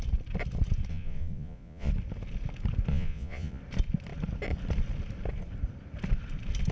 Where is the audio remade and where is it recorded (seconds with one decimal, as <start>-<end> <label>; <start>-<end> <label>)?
0.0-0.9 recorded; 0.9-1.9 remade; 1.9-2.9 recorded; 2.9-3.6 remade; 3.6-6.7 recorded